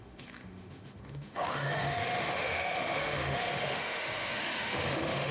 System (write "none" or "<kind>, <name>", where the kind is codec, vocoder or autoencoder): autoencoder, DAC-VAE